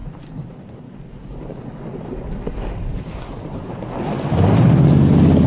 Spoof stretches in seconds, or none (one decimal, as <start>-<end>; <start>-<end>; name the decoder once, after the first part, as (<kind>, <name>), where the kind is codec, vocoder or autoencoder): 0.0-3.2 (vocoder, BigVGAN v2)